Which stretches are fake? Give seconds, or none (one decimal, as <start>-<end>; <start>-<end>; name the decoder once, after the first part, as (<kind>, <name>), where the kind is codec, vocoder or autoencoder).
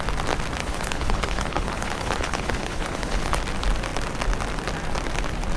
0.6-3.4 (codec, HILCodec)